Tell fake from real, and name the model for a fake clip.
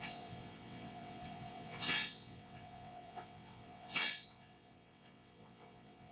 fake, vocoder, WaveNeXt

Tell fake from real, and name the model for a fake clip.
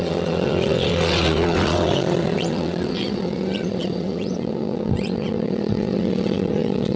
fake, vocoder, WaveNeXt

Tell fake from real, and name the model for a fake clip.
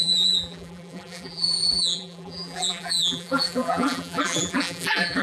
fake, vocoder, BigVGAN v2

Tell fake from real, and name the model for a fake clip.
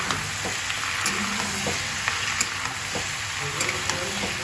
real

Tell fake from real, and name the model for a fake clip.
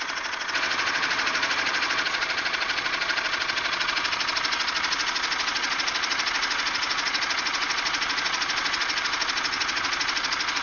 fake, vocoder, Vocos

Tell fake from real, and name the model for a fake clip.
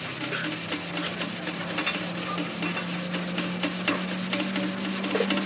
real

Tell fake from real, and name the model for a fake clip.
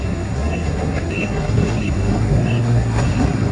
fake, codec, SNAC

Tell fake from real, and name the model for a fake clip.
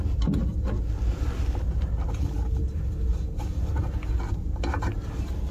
real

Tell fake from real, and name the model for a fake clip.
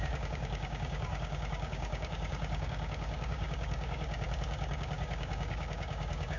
fake, codec, DAC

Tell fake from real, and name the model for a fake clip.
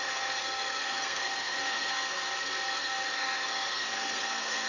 fake, codec, SNAC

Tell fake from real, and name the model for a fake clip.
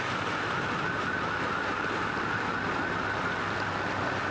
real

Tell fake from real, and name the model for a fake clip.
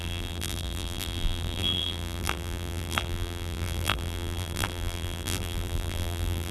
fake, vocoder, BigVGAN v2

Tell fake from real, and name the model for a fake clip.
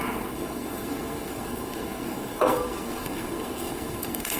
fake, codec, SNAC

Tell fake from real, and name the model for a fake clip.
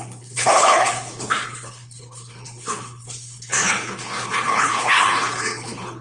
fake, codec, HILCodec